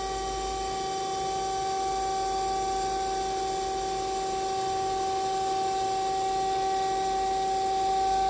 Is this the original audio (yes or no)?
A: yes